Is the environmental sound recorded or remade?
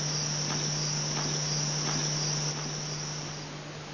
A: recorded